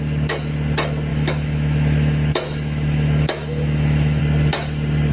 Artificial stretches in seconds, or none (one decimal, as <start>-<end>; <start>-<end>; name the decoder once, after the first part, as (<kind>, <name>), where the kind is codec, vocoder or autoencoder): 1.1-4.2 (autoencoder, DAC-VAE)